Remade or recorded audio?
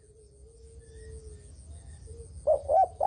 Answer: recorded